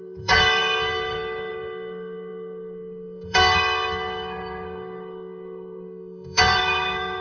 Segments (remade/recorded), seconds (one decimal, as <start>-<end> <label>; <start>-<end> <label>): 0.0-7.2 remade